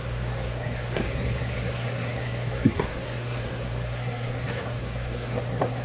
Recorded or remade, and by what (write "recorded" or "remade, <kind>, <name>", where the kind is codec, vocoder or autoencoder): remade, codec, SNAC